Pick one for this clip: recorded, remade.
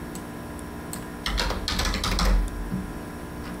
recorded